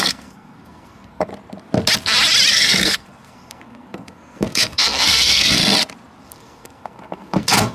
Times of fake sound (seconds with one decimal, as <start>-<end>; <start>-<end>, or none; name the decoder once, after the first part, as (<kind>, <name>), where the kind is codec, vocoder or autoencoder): 0.0-1.3 (codec, SNAC); 2.5-5.6; 6.2-7.7